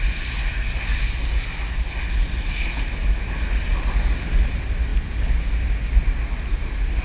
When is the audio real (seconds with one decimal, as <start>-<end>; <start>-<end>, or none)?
0.0-7.0

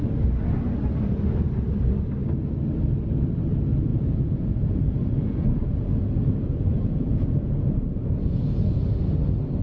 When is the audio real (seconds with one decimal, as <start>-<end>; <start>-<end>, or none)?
0.0-3.9; 9.1-9.6

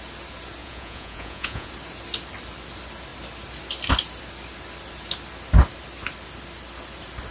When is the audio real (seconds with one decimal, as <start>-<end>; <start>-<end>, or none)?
0.0-0.6; 1.7-7.3

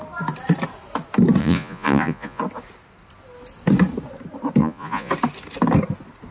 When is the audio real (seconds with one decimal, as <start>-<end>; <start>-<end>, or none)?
0.0-1.4; 2.4-4.6; 5.1-6.3

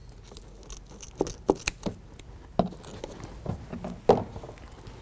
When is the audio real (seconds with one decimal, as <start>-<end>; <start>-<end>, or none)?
0.0-5.0